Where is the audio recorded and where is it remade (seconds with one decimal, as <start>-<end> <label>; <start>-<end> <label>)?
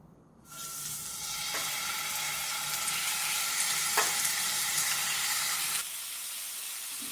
0.0-7.1 recorded